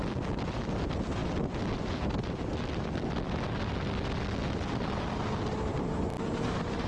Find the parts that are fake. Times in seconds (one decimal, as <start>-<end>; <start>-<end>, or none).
5.7-6.9